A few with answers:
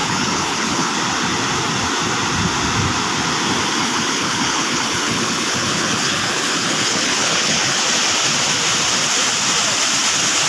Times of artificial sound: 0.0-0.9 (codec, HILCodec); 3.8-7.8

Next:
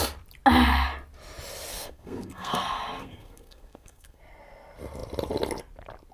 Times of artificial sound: 1.7-4.2 (codec, SNAC)

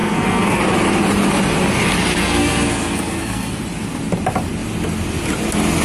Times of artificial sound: 0.0-0.6 (codec, SNAC); 2.1-3.6

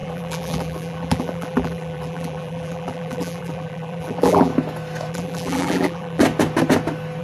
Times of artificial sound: 0.0-4.5 (vocoder, BigVGAN v2); 5.1-6.2

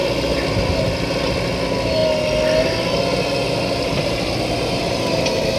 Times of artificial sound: none

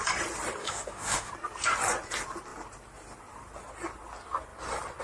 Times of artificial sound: 0.6-1.3 (autoencoder, DAC-VAE)

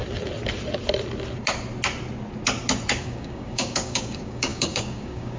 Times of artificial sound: 3.0-5.4 (codec, DAC)